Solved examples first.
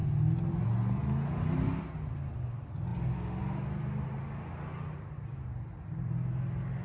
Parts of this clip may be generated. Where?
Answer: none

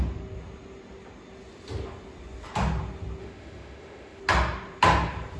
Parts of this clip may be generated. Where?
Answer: 3.2-4.2 (autoencoder, DAC-VAE)

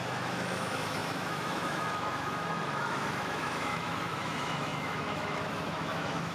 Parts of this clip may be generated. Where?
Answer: 0.0-6.3 (autoencoder, DAC-VAE)

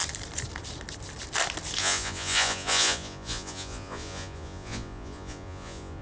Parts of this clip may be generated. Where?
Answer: 1.8-6.0 (vocoder, Vocos)

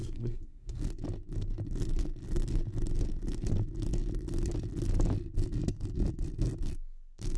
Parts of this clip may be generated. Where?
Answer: 0.0-0.8 (codec, SNAC)

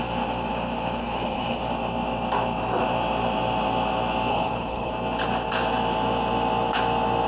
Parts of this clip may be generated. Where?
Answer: 1.0-1.6 (codec, HILCodec); 4.3-4.9